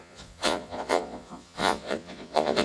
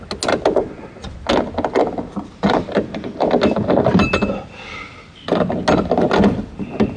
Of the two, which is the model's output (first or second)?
first